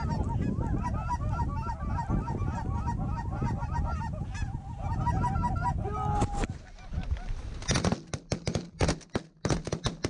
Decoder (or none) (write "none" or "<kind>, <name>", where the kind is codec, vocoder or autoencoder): none